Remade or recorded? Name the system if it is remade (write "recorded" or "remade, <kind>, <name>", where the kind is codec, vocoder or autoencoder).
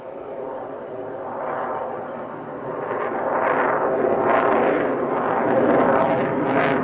recorded